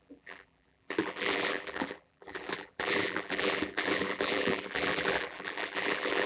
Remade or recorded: remade